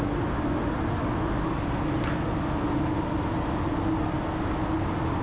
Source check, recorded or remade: recorded